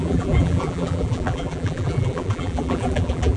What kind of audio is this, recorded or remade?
remade